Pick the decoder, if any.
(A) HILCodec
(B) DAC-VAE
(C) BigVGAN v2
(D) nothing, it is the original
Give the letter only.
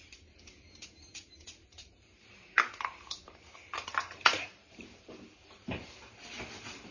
C